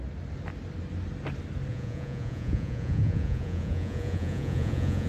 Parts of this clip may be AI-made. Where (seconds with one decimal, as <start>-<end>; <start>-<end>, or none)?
1.7-5.1